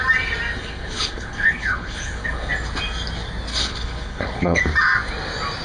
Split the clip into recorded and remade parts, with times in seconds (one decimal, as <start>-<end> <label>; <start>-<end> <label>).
0.0-0.6 recorded; 0.6-2.5 remade; 2.5-3.5 recorded; 3.5-4.6 remade; 4.6-5.6 recorded